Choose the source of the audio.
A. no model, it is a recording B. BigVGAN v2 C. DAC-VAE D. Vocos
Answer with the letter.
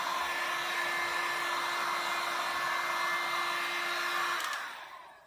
A